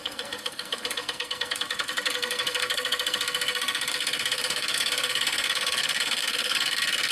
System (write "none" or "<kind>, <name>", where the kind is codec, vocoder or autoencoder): codec, SNAC